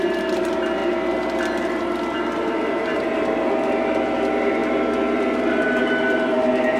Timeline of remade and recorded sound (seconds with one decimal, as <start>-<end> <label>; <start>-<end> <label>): 0.0-6.8 recorded